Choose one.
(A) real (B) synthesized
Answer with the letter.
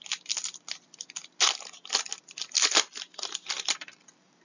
A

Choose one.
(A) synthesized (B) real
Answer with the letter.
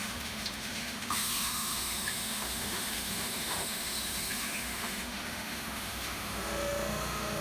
A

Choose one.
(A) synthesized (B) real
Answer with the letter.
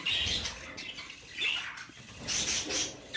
B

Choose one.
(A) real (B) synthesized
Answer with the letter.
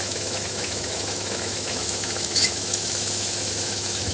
B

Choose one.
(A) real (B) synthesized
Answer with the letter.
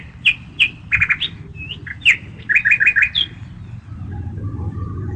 A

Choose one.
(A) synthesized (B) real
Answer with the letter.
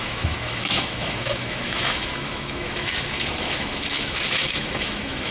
A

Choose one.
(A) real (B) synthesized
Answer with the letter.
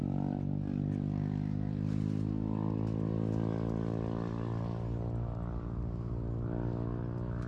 A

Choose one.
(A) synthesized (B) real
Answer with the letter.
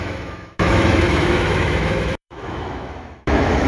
A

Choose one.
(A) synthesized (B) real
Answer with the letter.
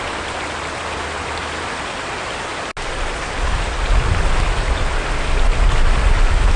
B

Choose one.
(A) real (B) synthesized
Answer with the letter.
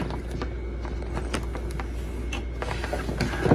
A